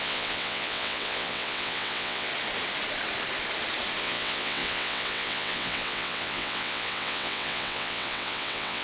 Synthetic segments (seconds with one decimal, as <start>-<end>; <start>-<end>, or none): 0.0-2.3; 4.0-8.8